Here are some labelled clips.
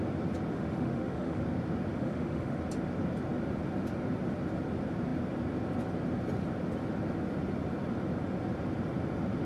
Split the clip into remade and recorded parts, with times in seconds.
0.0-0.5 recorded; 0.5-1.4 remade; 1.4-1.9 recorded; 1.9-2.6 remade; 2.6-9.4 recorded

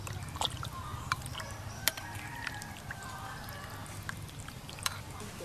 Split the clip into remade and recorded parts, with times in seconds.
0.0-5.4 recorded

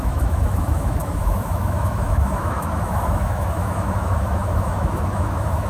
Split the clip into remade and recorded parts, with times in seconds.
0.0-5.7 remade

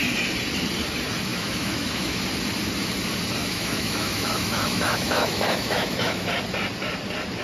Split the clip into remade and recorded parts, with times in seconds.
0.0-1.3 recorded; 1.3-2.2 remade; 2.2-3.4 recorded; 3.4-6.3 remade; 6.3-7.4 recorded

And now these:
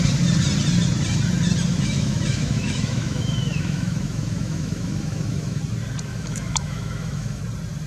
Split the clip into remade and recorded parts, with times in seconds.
0.0-1.7 recorded; 1.7-5.6 remade; 5.6-6.1 recorded; 6.1-7.4 remade; 7.4-7.9 recorded

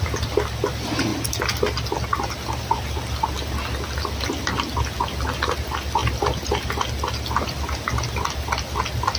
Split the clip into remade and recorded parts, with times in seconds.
0.0-9.2 recorded

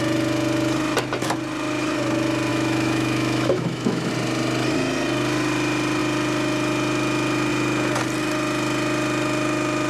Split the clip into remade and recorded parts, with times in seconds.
0.0-2.5 recorded; 2.5-4.1 remade; 4.1-9.9 recorded